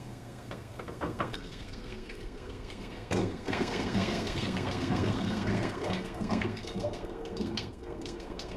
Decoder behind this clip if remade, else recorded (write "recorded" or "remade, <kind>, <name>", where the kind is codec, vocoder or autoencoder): remade, codec, SNAC